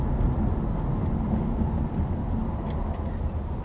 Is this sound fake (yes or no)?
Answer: no